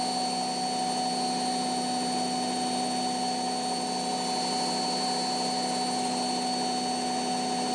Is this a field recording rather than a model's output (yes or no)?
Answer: yes